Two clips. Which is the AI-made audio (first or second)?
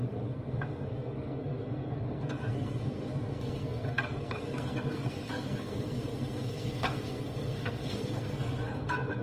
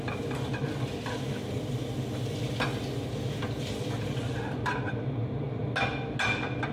first